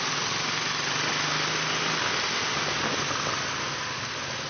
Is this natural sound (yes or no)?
yes